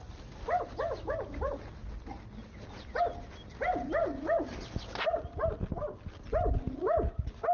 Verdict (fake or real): real